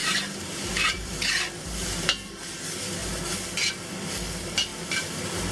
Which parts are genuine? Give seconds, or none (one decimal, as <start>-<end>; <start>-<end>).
1.3-1.8; 2.4-5.5